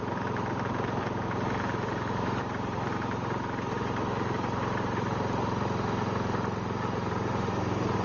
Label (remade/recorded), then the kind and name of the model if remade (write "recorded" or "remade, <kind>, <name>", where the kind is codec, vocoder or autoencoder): remade, vocoder, BigVGAN v2